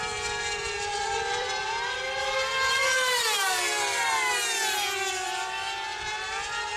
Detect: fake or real fake